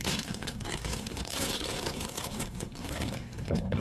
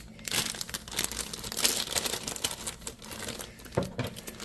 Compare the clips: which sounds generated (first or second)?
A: first